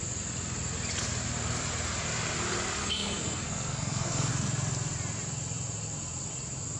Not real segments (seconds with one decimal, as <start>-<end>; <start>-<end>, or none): 2.8-4.3

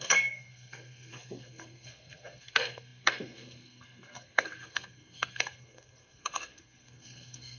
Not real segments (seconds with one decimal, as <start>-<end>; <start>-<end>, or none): 0.0-7.6

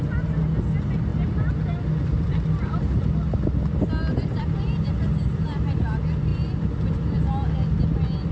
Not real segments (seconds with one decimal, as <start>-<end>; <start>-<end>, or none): none

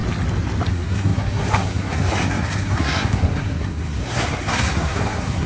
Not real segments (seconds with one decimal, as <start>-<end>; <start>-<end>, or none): 0.7-5.5

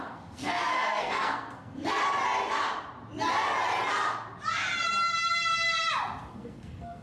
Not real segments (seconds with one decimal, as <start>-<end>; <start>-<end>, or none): 0.0-2.0; 6.2-7.0

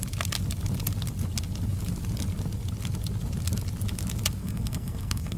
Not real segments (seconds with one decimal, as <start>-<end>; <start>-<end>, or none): 4.4-5.4